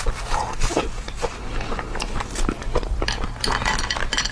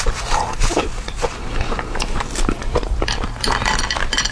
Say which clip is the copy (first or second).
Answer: second